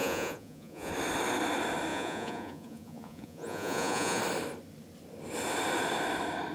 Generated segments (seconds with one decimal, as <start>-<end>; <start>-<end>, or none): 0.0-0.9; 1.9-4.2